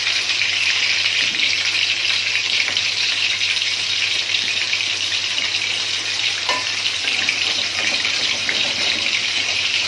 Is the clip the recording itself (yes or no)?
no